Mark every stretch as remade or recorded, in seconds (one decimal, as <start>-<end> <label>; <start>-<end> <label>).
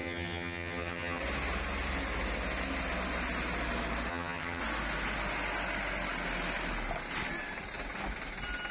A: 0.0-1.2 remade; 1.2-4.1 recorded; 4.1-4.6 remade; 4.6-8.7 recorded